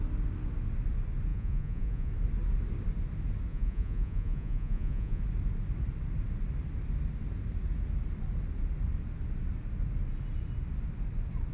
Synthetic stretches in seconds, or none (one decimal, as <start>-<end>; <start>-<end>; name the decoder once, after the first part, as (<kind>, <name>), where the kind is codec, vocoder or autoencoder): 1.3-2.1 (vocoder, Vocos); 3.5-5.2